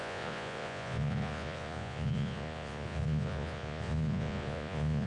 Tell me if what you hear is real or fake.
fake